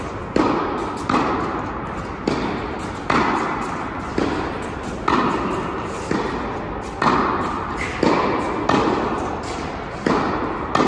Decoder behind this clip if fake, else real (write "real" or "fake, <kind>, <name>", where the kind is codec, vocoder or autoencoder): real